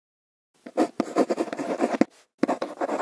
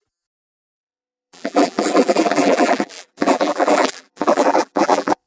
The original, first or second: first